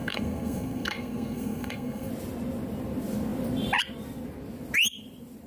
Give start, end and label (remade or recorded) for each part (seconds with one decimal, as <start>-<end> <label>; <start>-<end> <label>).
0.0-2.1 remade; 2.1-5.5 recorded